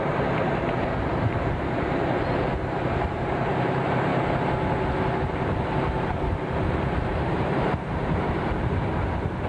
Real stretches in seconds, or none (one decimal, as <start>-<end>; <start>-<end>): 4.1-5.2

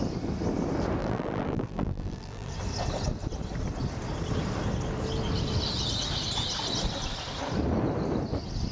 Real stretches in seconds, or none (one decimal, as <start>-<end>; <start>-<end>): 0.0-1.0; 2.5-8.7

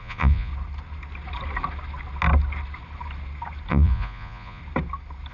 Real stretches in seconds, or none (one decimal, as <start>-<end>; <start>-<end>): 0.5-3.7; 4.6-5.3

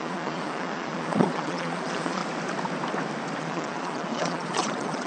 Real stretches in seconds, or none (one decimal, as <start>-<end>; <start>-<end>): 2.2-3.4

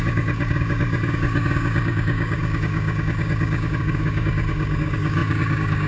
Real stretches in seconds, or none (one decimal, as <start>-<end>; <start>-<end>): none

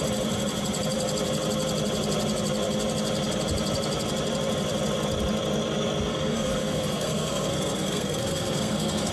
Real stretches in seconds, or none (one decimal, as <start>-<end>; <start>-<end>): 0.0-6.1

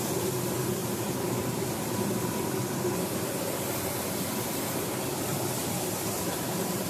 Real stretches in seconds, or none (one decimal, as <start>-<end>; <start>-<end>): 0.0-0.8; 1.9-5.1